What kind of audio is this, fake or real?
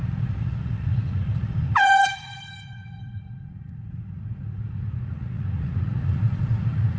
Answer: fake